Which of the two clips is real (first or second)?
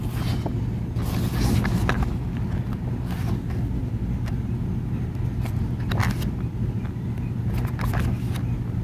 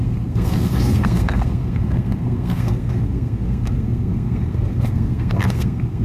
first